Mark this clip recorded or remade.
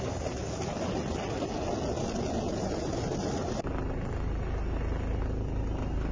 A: recorded